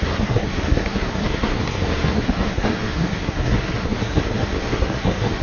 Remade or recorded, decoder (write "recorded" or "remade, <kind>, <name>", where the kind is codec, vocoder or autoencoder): remade, codec, SNAC